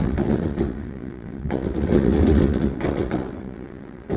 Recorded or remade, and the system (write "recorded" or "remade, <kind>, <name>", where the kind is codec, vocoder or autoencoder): remade, vocoder, WaveNeXt